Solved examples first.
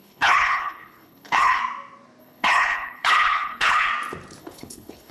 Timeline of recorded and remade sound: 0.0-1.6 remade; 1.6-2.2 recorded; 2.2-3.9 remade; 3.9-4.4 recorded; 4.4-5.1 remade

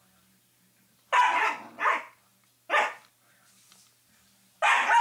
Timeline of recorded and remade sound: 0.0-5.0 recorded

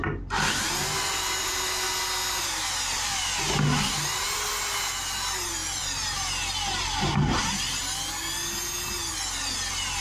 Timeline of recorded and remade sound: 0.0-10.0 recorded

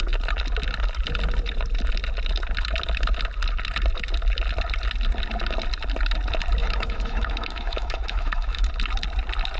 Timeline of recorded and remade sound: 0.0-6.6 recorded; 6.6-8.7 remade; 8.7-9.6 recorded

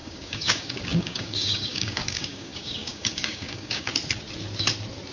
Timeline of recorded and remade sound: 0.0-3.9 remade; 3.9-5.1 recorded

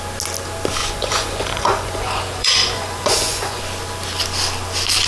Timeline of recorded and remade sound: 0.0-0.8 recorded; 0.8-3.6 remade; 3.6-5.1 recorded

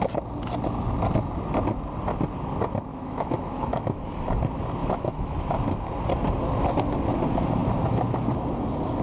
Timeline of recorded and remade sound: 0.0-2.9 recorded; 2.9-4.0 remade; 4.0-4.8 recorded; 4.8-5.4 remade; 5.4-9.0 recorded

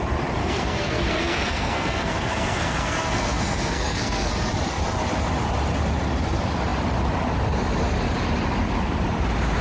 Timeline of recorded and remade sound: 0.0-0.4 recorded; 0.4-4.3 remade; 4.3-9.6 recorded